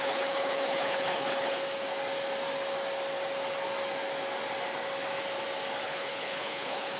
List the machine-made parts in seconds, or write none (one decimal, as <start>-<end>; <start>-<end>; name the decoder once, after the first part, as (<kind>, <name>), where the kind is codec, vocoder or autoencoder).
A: 0.0-1.6 (codec, HILCodec); 5.8-7.0